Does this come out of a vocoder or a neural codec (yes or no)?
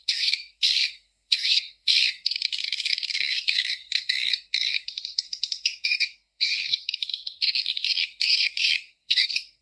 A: yes